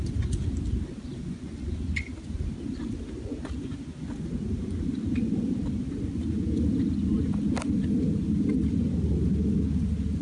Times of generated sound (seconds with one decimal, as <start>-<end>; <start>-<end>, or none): 1.1-1.7